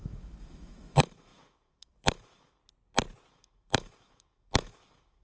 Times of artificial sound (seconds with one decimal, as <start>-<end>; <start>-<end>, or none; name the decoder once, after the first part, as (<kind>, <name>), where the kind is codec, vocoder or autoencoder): 0.0-2.6 (autoencoder, DAC-VAE); 3.3-5.2